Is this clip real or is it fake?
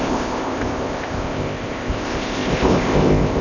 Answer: fake